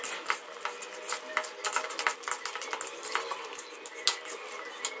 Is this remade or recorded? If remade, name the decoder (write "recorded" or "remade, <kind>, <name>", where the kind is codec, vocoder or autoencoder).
recorded